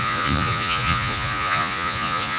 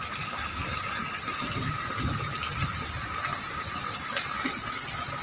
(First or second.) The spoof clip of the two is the first